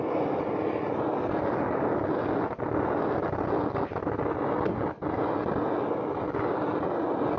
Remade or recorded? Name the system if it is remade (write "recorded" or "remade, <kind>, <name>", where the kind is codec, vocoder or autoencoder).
recorded